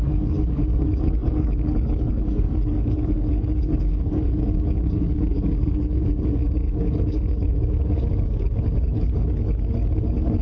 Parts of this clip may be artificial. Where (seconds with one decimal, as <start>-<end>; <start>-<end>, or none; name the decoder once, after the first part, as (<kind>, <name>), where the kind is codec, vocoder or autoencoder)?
0.0-10.4 (codec, DAC)

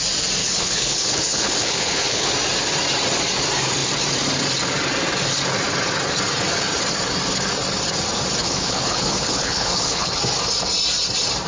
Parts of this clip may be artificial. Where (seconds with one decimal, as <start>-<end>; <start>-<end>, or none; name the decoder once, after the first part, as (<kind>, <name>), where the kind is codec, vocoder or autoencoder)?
0.4-2.3 (codec, HILCodec); 8.4-10.1

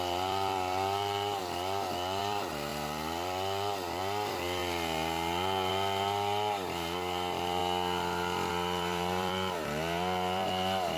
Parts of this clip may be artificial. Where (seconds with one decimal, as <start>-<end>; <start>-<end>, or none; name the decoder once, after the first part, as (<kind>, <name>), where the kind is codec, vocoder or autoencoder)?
0.0-4.6 (vocoder, BigVGAN v2); 5.7-7.6; 8.5-11.0